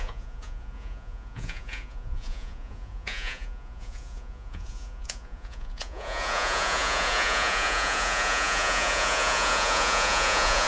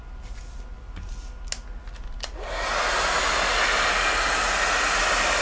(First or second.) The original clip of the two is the second